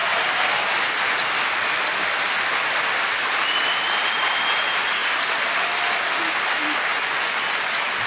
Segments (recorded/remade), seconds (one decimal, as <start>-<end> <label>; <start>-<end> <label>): 0.0-6.9 recorded; 6.9-7.4 remade; 7.4-8.1 recorded